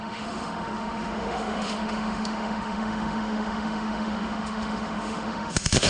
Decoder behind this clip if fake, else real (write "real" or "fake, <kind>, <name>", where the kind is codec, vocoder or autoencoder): fake, autoencoder, DAC-VAE